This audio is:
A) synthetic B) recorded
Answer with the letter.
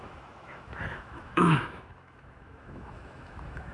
A